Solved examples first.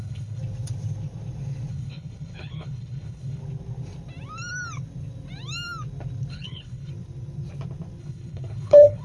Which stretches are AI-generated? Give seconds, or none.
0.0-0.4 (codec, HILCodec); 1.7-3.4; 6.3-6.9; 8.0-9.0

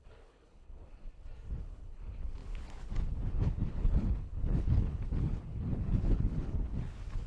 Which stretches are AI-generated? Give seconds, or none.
0.0-1.1 (codec, HILCodec); 1.6-7.3

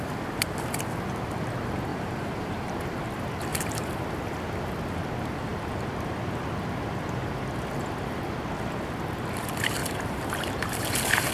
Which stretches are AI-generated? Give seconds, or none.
1.9-2.7 (vocoder, BigVGAN v2); 3.5-4.0; 9.8-11.3

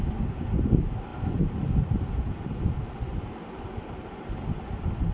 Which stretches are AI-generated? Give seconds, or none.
none

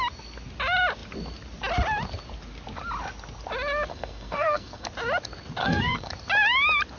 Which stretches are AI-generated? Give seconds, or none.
3.9-4.9 (codec, SNAC); 5.6-6.1

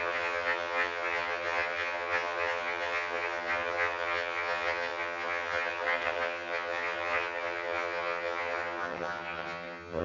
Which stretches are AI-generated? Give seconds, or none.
0.0-10.0 (vocoder, HiFi-GAN)